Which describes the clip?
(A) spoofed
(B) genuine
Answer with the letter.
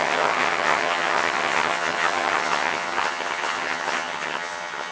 A